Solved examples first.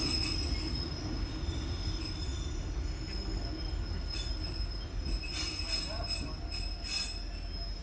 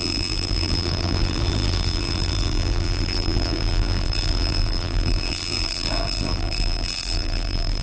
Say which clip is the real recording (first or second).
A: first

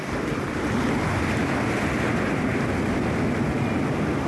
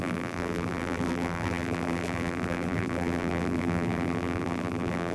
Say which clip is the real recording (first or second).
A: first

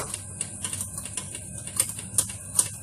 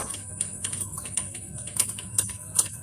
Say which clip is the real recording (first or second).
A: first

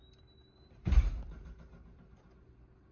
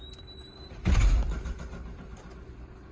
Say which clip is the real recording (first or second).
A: first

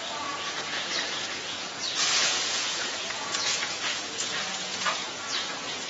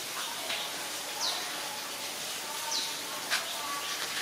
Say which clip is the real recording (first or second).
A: second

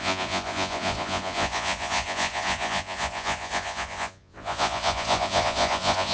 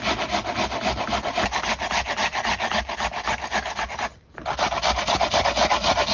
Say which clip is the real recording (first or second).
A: second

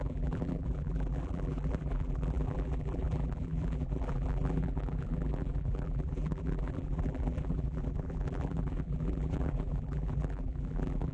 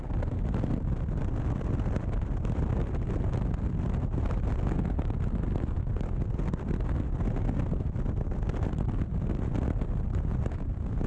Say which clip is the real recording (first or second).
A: second